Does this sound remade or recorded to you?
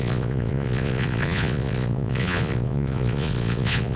remade